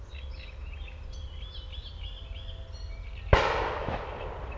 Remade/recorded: recorded